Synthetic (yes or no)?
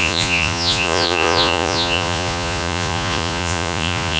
yes